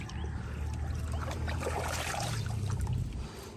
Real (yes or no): yes